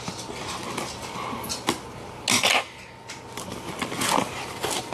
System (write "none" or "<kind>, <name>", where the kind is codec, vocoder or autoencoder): none